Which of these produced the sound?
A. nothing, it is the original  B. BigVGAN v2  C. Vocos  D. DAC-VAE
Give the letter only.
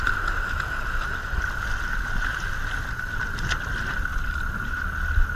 A